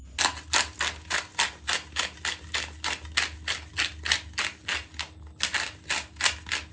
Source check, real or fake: real